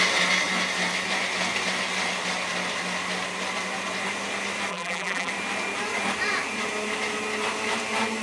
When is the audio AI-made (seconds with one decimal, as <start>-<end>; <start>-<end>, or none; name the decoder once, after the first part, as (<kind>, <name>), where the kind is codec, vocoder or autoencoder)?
4.7-5.3 (vocoder, BigVGAN v2)